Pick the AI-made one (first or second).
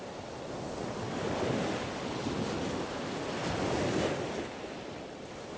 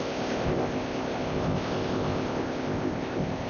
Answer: second